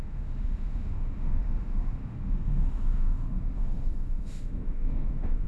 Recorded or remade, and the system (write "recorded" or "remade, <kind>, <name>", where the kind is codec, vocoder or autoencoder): remade, autoencoder, DAC-VAE